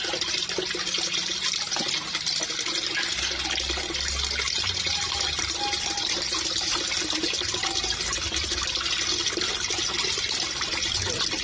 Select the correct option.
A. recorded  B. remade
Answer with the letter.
A